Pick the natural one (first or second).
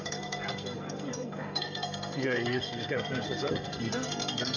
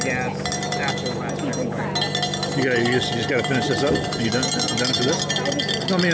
second